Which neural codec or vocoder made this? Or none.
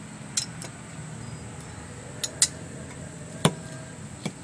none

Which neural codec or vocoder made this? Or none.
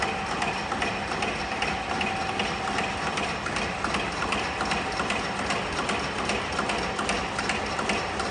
none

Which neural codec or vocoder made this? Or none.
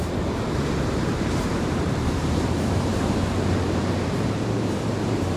vocoder, BigVGAN v2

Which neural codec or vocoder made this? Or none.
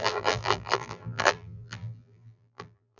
vocoder, BigVGAN v2